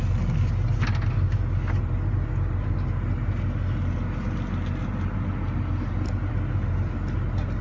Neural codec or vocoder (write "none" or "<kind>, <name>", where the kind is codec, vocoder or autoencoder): none